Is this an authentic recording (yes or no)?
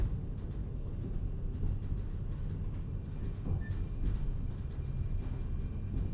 yes